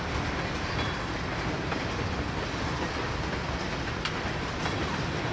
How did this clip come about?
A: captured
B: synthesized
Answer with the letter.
A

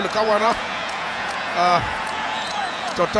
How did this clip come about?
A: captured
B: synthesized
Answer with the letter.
B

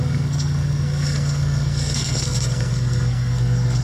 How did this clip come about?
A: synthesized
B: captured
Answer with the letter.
A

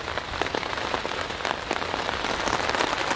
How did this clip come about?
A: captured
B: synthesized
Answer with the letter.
B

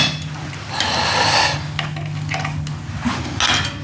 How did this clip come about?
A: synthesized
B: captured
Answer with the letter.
B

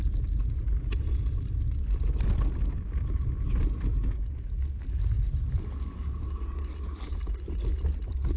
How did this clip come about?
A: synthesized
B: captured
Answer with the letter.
B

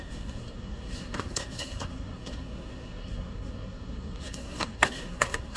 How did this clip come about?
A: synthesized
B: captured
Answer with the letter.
A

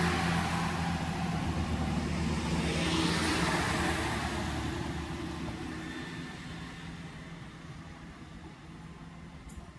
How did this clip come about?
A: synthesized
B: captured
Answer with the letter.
B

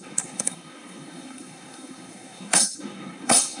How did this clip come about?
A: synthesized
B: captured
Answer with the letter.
A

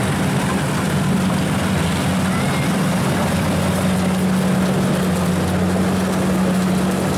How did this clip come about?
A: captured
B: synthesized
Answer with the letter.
A